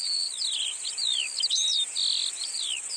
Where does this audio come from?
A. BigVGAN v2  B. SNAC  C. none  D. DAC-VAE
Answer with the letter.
A